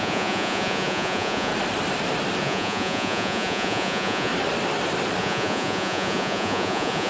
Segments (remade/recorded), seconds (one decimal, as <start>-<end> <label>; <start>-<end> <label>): 0.0-1.5 remade; 1.5-2.4 recorded; 2.4-4.3 remade; 4.3-5.2 recorded; 5.2-7.1 remade